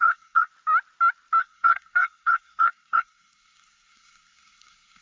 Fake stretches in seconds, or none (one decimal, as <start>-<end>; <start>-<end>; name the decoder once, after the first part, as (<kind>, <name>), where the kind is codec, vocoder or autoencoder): 0.0-0.5 (codec, SNAC); 1.4-5.0